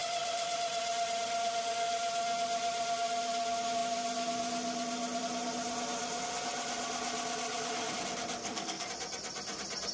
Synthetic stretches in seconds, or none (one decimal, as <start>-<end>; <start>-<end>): 8.4-8.9